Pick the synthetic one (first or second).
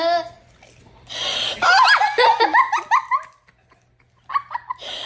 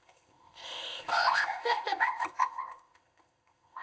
second